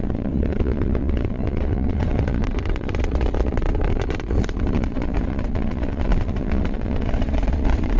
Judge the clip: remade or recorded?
remade